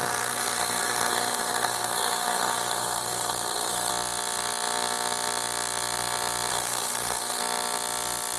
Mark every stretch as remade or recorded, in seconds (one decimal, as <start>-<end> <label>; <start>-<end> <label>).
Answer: 0.0-3.9 remade; 3.9-6.5 recorded; 6.5-7.4 remade; 7.4-8.4 recorded